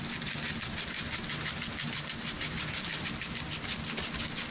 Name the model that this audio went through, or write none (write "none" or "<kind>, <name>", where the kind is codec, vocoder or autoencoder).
none